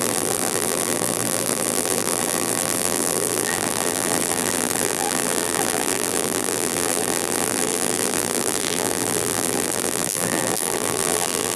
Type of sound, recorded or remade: remade